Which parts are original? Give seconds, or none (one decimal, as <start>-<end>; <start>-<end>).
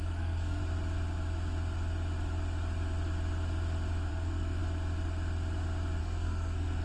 0.6-4.1; 4.6-6.0